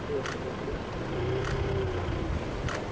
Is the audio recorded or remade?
recorded